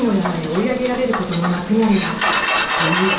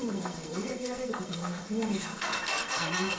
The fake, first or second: second